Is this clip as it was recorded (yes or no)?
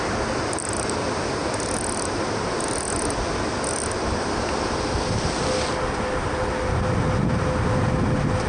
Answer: yes